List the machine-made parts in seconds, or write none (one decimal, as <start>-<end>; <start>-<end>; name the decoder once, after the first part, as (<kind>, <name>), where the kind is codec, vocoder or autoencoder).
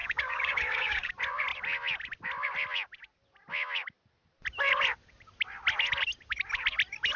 0.0-1.1 (codec, DAC)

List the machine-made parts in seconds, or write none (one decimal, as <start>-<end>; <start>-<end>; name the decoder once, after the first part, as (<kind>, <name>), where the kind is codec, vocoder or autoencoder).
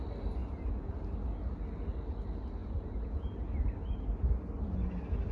0.4-0.9 (vocoder, Vocos); 2.6-3.4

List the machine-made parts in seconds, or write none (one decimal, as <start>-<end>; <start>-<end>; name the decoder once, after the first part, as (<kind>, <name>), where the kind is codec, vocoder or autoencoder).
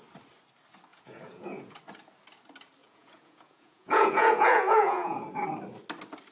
0.9-1.8 (vocoder, Vocos); 2.8-5.4